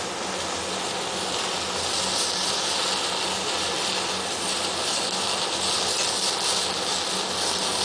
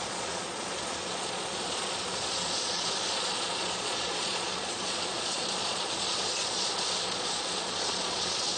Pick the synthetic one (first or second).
second